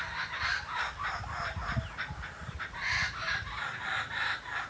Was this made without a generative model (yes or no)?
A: yes